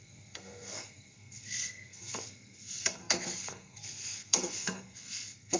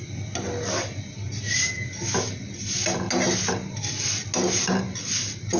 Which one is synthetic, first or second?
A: first